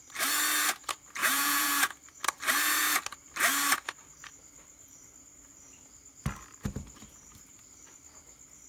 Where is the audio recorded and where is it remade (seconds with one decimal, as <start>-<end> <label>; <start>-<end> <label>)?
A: 0.0-1.2 recorded; 1.2-1.7 remade; 1.7-8.7 recorded

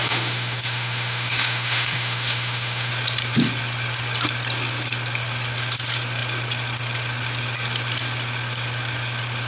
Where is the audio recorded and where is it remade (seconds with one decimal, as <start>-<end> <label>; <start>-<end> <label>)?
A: 0.0-2.9 remade; 2.9-9.5 recorded